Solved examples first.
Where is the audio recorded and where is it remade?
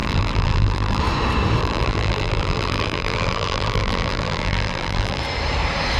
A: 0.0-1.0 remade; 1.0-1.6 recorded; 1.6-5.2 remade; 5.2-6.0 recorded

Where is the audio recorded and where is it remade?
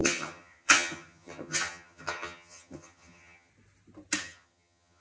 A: 0.0-3.5 remade; 3.5-4.2 recorded; 4.2-5.0 remade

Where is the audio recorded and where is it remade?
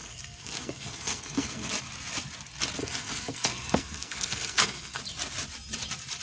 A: 0.0-1.7 remade; 1.7-2.8 recorded; 2.8-5.0 remade; 5.0-6.2 recorded